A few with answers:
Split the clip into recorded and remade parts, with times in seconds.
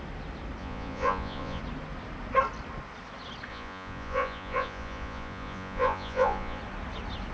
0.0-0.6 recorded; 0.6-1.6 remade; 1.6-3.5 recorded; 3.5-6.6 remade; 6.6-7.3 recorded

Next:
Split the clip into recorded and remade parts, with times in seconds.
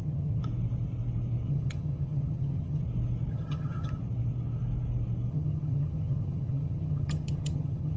0.0-0.4 remade; 0.4-1.5 recorded; 1.5-2.8 remade; 2.8-3.3 recorded; 3.3-4.0 remade; 4.0-5.3 recorded; 5.3-8.0 remade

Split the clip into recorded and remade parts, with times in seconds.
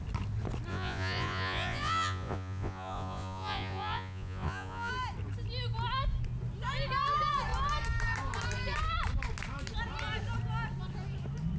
0.0-0.7 recorded; 0.7-4.9 remade; 4.9-11.6 recorded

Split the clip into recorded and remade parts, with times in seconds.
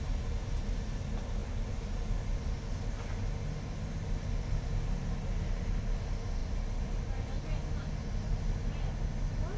0.0-9.6 recorded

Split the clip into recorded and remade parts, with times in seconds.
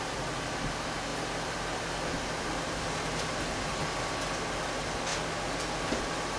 0.0-6.4 recorded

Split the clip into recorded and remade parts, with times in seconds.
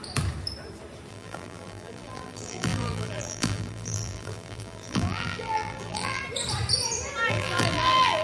0.0-1.1 recorded; 1.1-6.2 remade; 6.2-7.3 recorded; 7.3-8.2 remade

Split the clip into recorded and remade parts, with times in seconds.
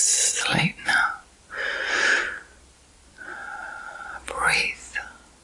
0.0-5.4 remade